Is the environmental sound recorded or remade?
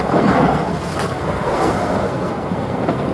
remade